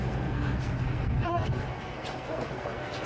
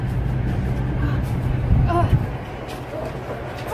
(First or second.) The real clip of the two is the second